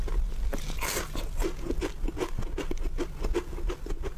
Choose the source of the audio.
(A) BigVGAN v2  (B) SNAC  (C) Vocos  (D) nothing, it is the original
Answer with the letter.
D